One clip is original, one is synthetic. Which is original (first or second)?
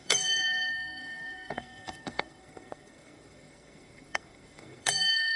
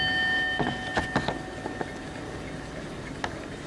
second